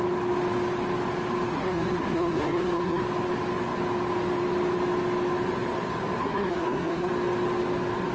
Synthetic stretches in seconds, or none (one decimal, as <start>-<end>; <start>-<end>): 1.5-3.0; 6.2-7.1